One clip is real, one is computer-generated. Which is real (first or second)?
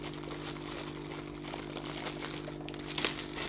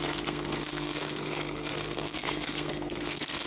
first